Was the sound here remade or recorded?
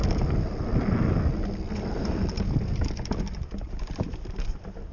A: remade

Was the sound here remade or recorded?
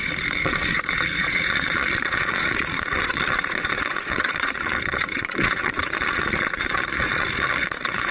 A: remade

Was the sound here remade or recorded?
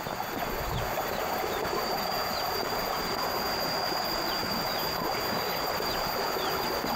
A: recorded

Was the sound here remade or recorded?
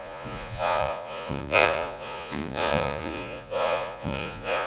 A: remade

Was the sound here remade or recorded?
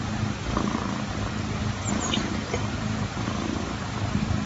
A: recorded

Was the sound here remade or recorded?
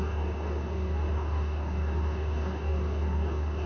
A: remade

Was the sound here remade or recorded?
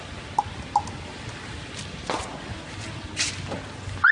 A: recorded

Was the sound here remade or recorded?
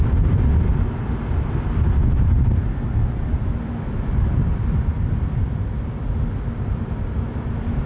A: recorded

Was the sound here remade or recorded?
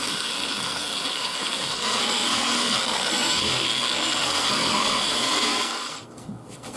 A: remade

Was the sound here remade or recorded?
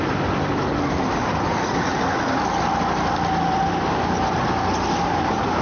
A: recorded